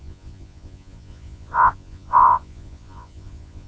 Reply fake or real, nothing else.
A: fake